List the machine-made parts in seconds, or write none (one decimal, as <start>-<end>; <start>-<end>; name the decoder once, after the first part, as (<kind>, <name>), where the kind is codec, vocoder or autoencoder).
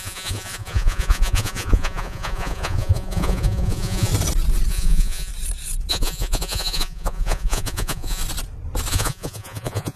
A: 0.0-4.1 (vocoder, Vocos); 4.7-5.3; 5.9-8.2; 8.9-10.0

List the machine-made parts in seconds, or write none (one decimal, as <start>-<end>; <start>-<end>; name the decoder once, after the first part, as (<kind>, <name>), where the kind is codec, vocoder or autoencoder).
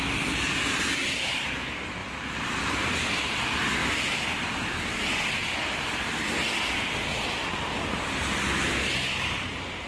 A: 3.8-4.5 (vocoder, BigVGAN v2)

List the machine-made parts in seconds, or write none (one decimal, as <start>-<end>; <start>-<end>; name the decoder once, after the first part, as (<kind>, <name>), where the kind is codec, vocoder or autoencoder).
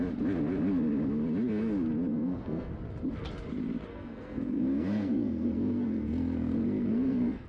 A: 2.1-2.7 (codec, SNAC); 3.9-7.5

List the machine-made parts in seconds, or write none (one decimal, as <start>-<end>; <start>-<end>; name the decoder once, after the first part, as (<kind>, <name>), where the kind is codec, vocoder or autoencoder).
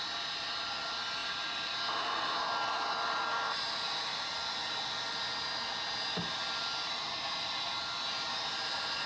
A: none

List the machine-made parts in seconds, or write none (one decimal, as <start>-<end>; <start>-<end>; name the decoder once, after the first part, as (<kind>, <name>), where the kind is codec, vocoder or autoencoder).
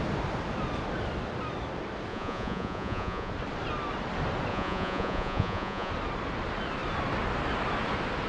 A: 2.1-3.3 (vocoder, Vocos); 4.5-5.9